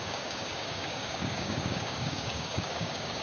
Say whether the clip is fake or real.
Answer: fake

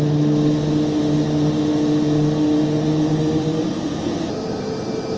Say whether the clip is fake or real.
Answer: real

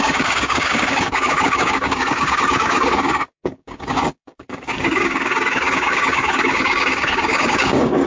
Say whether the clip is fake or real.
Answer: fake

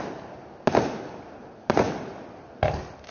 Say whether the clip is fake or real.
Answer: real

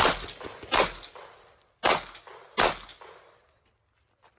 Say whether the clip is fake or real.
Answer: real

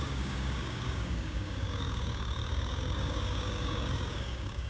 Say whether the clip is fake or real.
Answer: fake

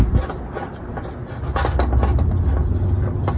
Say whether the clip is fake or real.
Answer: real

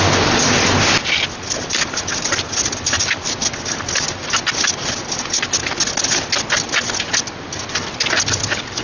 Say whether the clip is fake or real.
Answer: real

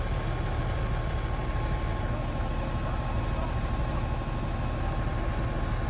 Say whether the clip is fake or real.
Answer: real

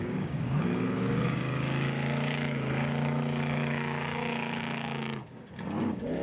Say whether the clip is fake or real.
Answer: fake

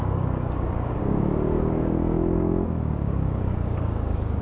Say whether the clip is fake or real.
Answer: fake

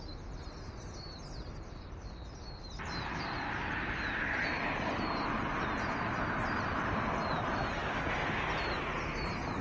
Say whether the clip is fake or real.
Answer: real